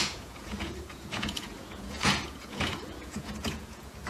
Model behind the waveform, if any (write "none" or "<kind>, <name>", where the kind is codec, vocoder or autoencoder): vocoder, Vocos